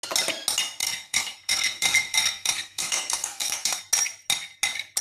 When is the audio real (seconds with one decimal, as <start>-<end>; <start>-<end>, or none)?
0.0-0.8; 3.8-5.0